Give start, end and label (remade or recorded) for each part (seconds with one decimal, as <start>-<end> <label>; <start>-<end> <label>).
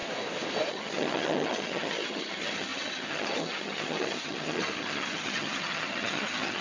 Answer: 0.0-0.7 recorded; 0.7-6.6 remade